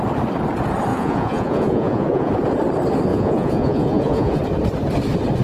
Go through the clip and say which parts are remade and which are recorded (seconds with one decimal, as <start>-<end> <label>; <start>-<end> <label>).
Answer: 0.0-0.9 recorded; 0.9-2.3 remade; 2.3-3.1 recorded; 3.1-4.4 remade; 4.4-5.4 recorded